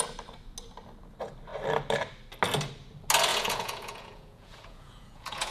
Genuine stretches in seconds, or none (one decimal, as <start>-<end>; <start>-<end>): 0.0-3.3